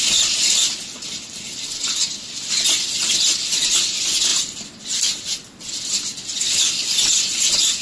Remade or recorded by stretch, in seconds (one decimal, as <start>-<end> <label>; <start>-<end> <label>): 0.0-7.8 recorded